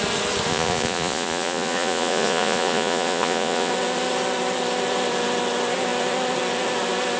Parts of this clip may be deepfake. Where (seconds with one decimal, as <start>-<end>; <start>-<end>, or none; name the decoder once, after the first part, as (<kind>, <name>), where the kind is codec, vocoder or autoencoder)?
0.5-3.7 (vocoder, Vocos)